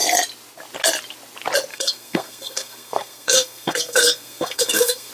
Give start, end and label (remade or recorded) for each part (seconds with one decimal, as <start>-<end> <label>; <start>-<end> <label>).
0.0-1.7 recorded; 1.7-5.1 remade